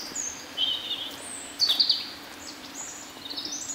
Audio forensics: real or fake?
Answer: real